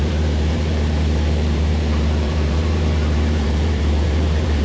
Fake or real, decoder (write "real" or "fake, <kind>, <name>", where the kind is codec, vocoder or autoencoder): fake, vocoder, BigVGAN v2